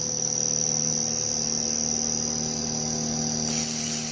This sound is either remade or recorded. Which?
recorded